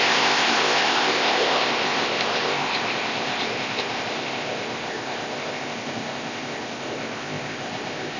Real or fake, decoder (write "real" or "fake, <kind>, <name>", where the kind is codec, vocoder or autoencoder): fake, codec, ZipCodec